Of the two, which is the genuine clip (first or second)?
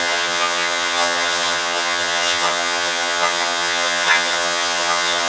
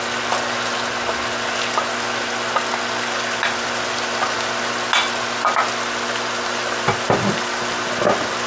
second